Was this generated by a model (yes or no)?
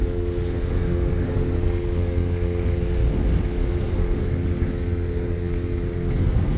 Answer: yes